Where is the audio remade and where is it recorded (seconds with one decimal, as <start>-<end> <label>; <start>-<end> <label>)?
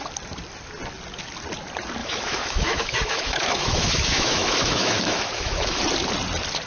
0.0-2.0 recorded; 2.0-5.8 remade; 5.8-6.7 recorded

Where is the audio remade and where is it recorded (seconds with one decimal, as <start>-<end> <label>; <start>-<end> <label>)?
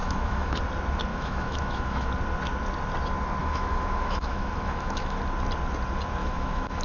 0.0-0.6 remade; 0.6-1.1 recorded; 1.1-2.1 remade; 2.1-3.4 recorded; 3.4-5.2 remade; 5.2-6.2 recorded; 6.2-6.8 remade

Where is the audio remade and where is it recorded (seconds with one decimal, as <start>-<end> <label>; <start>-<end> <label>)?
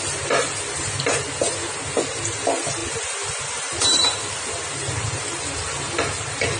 0.0-6.6 recorded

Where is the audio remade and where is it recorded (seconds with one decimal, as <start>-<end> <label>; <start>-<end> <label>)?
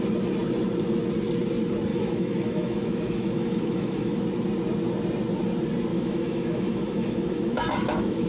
0.0-1.9 recorded; 1.9-4.2 remade; 4.2-5.9 recorded; 5.9-8.3 remade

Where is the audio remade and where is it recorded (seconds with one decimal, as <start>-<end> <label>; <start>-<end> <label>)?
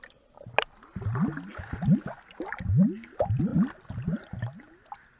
0.0-5.2 recorded